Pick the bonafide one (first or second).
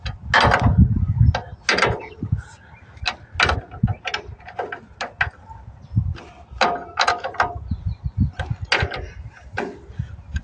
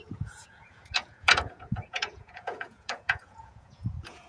first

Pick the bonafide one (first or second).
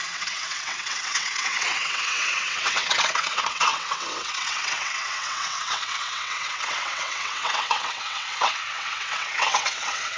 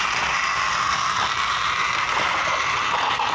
second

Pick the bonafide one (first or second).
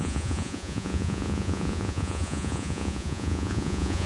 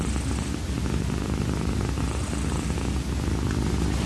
second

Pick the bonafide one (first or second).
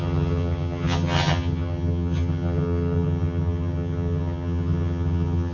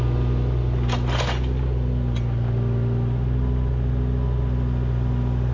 second